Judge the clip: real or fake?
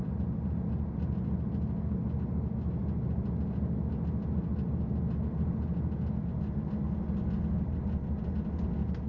real